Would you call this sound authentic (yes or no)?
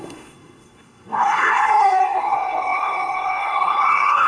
no